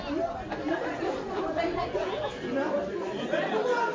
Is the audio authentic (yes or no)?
yes